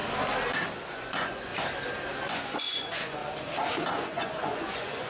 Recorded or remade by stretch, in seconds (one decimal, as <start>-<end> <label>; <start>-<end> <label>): 0.0-0.9 recorded; 0.9-1.5 remade; 1.5-2.3 recorded; 2.3-3.2 remade; 3.2-3.9 recorded; 3.9-5.1 remade